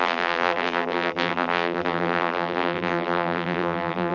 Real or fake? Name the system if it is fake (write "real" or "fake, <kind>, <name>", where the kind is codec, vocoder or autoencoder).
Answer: fake, vocoder, BigVGAN v2